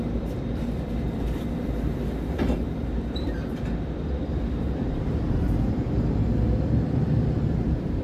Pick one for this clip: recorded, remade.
remade